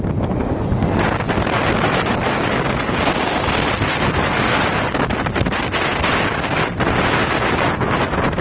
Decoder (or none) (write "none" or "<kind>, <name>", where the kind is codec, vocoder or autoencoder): none